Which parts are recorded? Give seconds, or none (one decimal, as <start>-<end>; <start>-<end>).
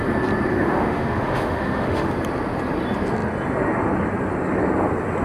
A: 0.0-0.5; 2.1-5.2